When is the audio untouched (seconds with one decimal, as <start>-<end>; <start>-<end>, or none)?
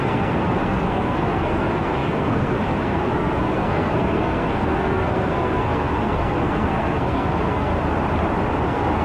7.7-8.6